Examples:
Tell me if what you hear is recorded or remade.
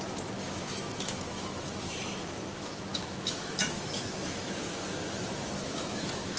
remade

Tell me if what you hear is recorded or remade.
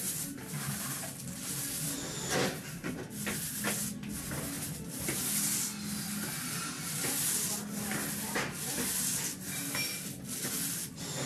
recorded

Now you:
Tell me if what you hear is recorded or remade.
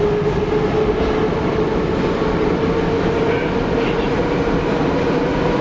recorded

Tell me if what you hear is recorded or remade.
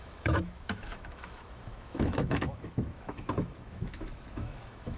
remade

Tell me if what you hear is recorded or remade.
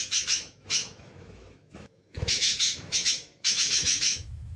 remade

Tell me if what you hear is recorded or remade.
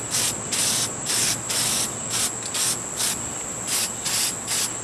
recorded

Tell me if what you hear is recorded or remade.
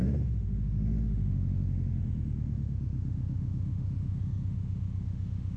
remade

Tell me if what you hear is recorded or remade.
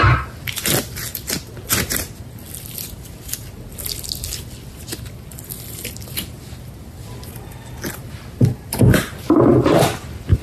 recorded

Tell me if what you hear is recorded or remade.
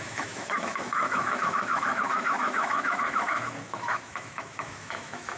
remade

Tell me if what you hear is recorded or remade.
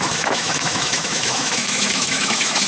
remade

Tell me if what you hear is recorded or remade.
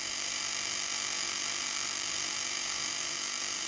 remade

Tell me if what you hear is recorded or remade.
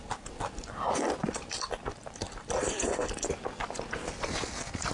recorded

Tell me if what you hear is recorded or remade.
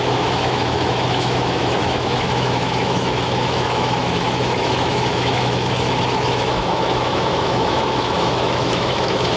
remade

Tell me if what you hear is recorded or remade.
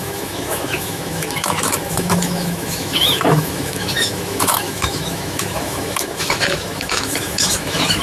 remade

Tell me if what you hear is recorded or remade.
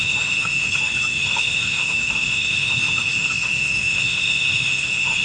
remade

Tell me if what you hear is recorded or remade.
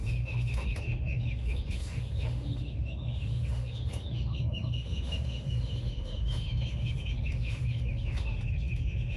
remade